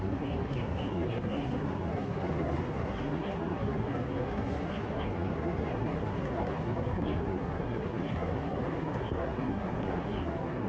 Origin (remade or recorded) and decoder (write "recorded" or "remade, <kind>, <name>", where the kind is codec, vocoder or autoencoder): remade, codec, SNAC